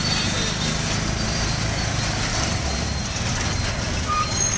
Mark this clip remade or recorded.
recorded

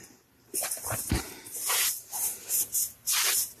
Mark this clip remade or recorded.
recorded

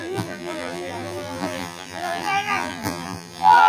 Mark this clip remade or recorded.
remade